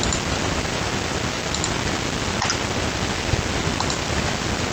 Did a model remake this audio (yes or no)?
no